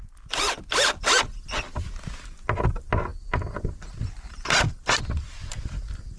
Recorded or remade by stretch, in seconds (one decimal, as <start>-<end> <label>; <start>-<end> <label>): 0.0-6.2 recorded

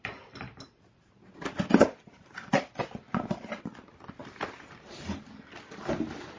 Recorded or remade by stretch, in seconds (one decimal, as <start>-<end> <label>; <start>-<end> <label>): 0.0-6.4 recorded

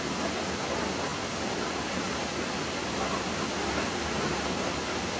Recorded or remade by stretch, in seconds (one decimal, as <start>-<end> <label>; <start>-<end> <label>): 0.0-5.2 recorded

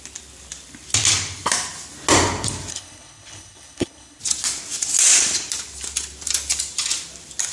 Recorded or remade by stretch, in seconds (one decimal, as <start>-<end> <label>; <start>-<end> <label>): 0.0-2.7 recorded; 2.7-4.2 remade; 4.2-7.5 recorded

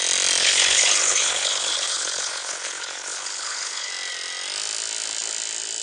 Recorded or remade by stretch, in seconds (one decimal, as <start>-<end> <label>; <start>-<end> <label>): 0.0-0.4 recorded; 0.4-3.9 remade; 3.9-5.8 recorded